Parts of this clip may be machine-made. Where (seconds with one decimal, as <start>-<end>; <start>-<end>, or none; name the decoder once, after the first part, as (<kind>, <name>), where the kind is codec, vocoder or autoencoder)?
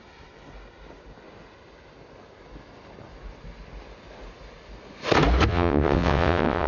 5.5-6.7 (vocoder, WaveNeXt)